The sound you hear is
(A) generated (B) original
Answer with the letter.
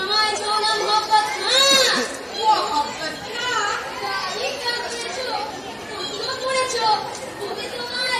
B